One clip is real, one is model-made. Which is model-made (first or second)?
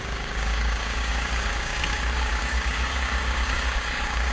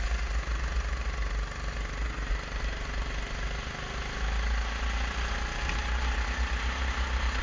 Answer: first